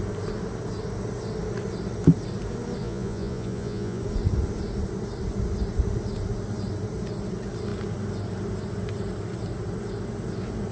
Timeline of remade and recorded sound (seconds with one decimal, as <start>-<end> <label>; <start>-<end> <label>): 0.0-2.8 recorded; 2.8-4.0 remade; 4.0-10.7 recorded